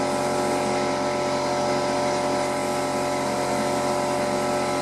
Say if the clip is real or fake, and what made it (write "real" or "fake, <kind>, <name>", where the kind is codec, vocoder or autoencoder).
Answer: real